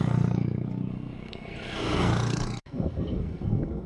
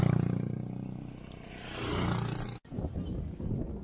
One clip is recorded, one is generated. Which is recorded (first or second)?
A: second